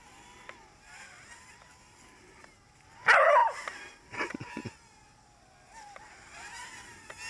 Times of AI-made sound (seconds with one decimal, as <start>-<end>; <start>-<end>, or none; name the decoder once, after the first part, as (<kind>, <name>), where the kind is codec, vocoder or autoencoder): 3.4-4.0 (vocoder, BigVGAN v2)